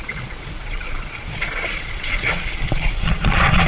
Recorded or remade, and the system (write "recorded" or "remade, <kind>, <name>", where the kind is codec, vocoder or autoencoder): remade, vocoder, Vocos